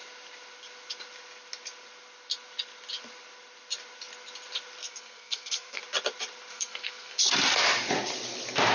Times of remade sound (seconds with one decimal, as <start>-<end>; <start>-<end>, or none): 4.8-5.8; 6.5-7.2